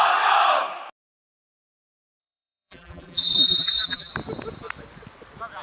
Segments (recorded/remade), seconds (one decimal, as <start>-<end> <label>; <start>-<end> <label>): 0.0-2.2 recorded; 2.2-4.1 remade; 4.1-5.6 recorded

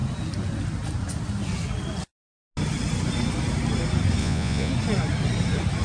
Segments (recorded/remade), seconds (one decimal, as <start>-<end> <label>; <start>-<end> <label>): 0.0-4.2 recorded; 4.2-4.7 remade; 4.7-5.8 recorded

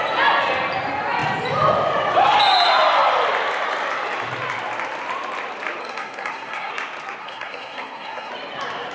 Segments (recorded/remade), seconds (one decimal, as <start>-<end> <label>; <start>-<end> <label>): 0.0-5.8 recorded; 5.8-6.7 remade; 6.7-7.2 recorded; 7.2-8.3 remade; 8.3-8.9 recorded